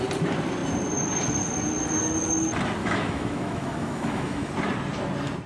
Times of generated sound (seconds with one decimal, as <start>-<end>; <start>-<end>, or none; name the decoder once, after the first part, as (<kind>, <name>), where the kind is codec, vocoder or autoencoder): 2.8-4.5 (autoencoder, DAC-VAE)